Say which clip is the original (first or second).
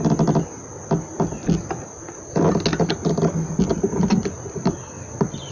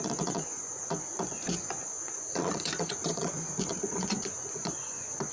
first